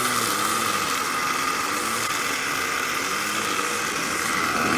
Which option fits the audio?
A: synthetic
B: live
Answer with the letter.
B